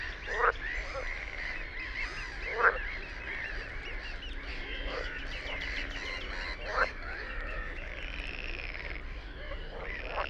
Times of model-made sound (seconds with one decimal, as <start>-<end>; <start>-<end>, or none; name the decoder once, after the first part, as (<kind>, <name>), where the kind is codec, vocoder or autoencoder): 4.5-5.2 (codec, DAC); 6.7-7.9; 9.2-9.8